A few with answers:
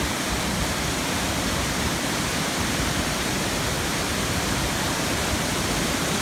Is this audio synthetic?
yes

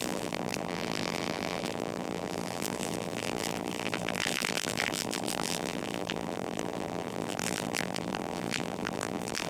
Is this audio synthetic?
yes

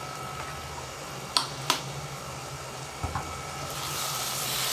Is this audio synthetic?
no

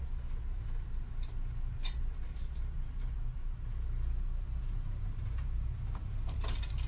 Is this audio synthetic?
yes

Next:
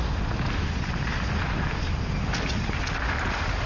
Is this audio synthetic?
no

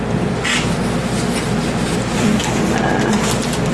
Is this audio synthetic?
no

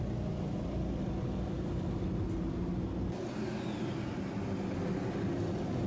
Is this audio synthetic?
no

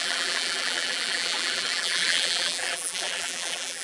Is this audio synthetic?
yes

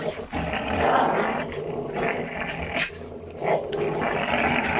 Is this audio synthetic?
no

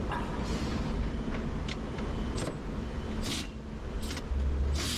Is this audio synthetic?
no